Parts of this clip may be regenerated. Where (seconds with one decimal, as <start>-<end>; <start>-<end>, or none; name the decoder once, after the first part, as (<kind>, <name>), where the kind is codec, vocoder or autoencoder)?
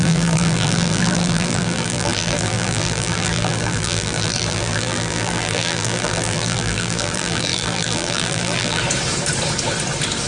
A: 0.0-8.8 (vocoder, BigVGAN v2)